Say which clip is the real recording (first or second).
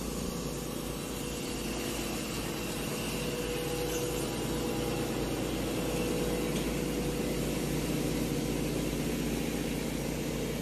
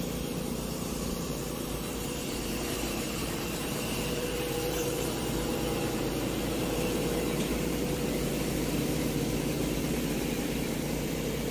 first